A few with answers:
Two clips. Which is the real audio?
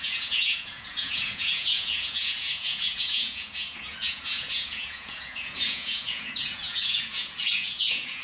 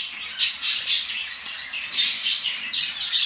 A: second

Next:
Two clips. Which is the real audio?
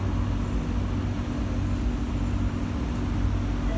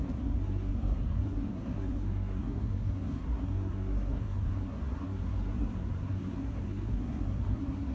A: first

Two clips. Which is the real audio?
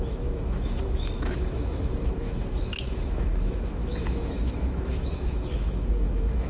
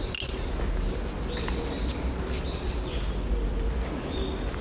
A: second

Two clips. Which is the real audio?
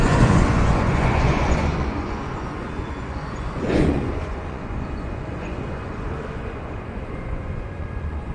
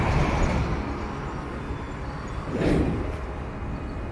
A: second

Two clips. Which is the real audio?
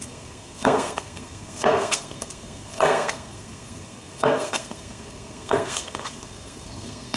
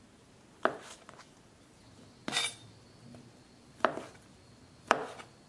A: second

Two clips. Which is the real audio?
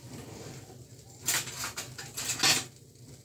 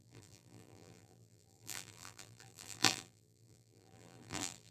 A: first